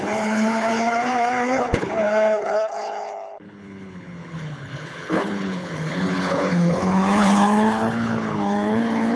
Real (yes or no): no